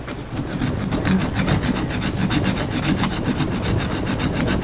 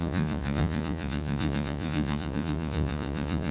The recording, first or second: first